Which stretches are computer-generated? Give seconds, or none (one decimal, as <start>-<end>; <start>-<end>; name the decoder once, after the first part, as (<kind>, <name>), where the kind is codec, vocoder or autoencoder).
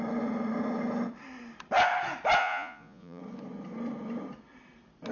2.4-3.2 (vocoder, Vocos)